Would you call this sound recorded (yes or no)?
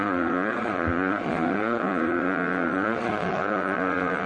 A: no